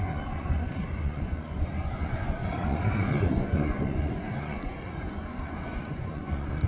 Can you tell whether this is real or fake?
fake